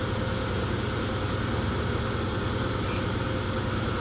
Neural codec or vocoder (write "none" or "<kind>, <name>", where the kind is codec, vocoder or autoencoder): none